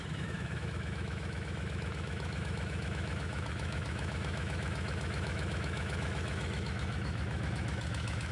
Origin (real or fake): fake